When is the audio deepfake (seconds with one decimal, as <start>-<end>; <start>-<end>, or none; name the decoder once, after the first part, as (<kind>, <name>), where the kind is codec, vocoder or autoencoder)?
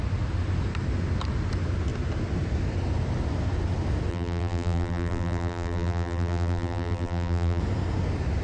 4.1-7.6 (vocoder, BigVGAN v2)